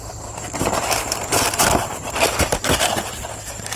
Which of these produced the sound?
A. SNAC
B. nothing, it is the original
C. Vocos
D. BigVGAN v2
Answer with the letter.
D